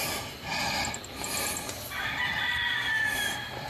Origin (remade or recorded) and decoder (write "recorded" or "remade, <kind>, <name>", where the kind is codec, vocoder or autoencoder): recorded